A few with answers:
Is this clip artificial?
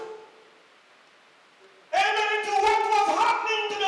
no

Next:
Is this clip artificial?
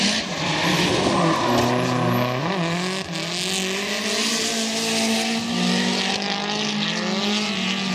no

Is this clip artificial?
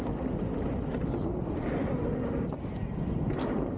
no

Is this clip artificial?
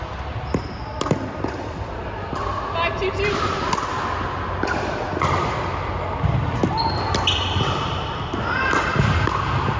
no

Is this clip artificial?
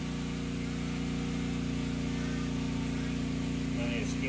no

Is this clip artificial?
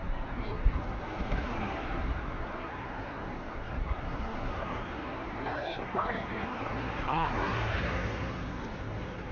yes